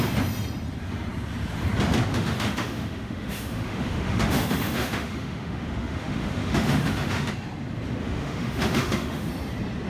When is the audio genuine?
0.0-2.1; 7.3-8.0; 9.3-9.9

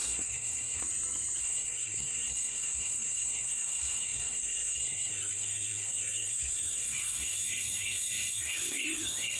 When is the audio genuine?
0.8-1.4

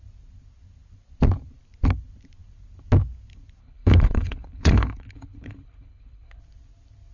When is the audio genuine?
0.0-3.6; 6.4-7.1

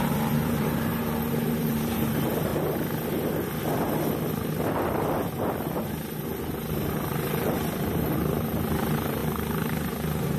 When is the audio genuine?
2.5-6.7

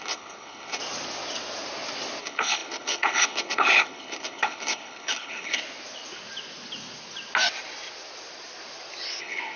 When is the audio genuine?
0.8-2.2; 5.6-9.2

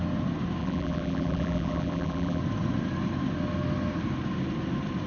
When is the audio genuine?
0.0-0.6; 2.4-5.1

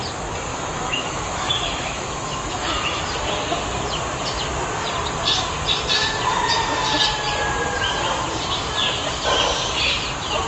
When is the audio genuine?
0.0-0.5; 3.0-10.5

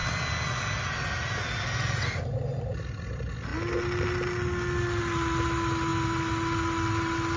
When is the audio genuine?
0.0-7.4